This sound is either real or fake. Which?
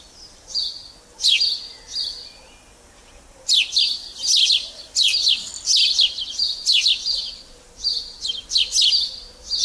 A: real